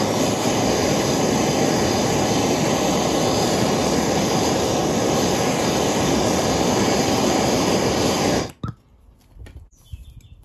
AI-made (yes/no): no